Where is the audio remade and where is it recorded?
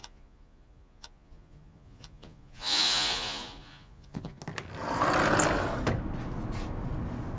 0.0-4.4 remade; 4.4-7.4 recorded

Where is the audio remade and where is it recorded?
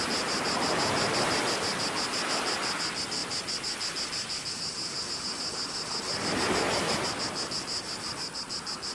0.0-8.9 recorded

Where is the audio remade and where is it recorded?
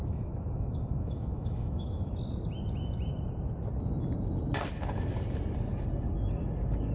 0.0-2.1 remade; 2.1-6.9 recorded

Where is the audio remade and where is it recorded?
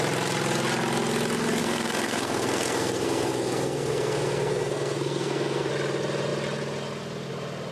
0.0-1.6 recorded; 1.6-5.7 remade; 5.7-7.7 recorded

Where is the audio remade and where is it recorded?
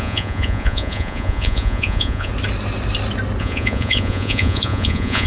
0.0-2.3 remade; 2.3-3.4 recorded; 3.4-5.3 remade